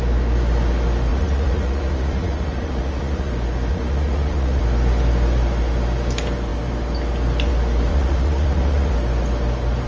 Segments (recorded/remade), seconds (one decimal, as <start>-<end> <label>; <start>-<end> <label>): 0.0-1.1 recorded; 1.1-3.3 remade; 3.3-3.7 recorded; 3.7-4.6 remade; 4.6-7.9 recorded; 7.9-8.9 remade; 8.9-9.9 recorded